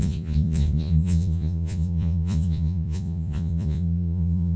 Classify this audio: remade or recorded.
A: remade